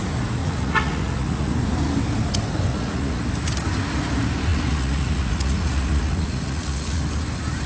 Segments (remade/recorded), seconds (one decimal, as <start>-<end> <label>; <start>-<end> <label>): 0.0-0.4 recorded; 0.4-1.5 remade; 1.5-2.7 recorded; 2.7-3.2 remade; 3.2-4.5 recorded; 4.5-7.0 remade; 7.0-7.7 recorded